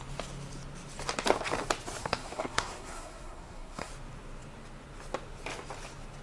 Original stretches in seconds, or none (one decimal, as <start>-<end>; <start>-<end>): 0.0-2.0; 3.9-6.2